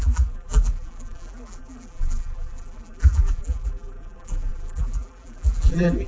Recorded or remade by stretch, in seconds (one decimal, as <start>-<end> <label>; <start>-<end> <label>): 0.0-6.1 remade